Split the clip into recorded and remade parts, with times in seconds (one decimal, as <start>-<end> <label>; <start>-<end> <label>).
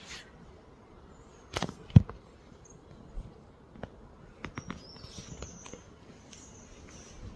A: 0.0-7.4 recorded